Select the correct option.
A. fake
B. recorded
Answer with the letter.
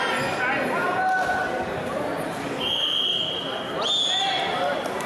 B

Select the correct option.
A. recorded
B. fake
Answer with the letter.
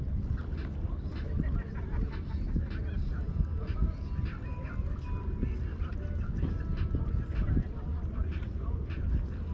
A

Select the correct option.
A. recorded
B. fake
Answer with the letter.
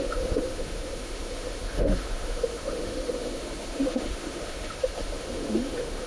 B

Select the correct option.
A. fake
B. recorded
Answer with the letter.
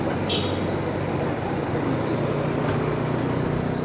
B